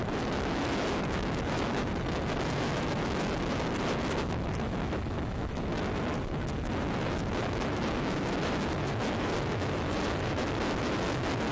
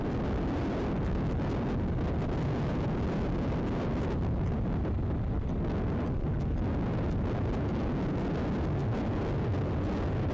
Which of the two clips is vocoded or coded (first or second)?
first